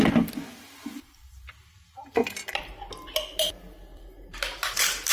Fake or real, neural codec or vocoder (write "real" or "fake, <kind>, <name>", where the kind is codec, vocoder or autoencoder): real